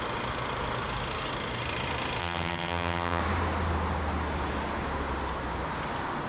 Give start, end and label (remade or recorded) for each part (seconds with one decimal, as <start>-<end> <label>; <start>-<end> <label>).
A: 0.0-2.2 recorded; 2.2-3.2 remade; 3.2-6.3 recorded